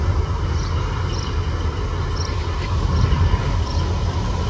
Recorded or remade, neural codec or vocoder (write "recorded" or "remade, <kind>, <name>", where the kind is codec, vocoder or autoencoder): recorded